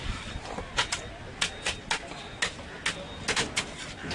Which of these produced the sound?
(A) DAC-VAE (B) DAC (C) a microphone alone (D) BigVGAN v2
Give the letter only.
C